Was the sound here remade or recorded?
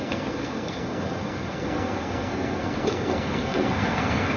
remade